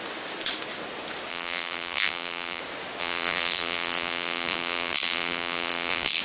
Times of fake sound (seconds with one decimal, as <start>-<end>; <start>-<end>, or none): 1.3-2.6; 3.0-6.2